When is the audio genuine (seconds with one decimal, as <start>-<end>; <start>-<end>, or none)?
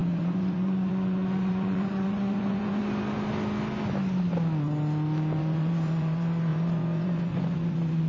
2.8-5.4